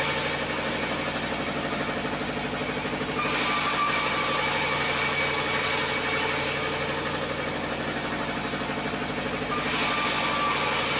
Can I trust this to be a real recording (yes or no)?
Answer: yes